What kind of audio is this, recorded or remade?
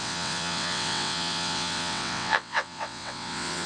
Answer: remade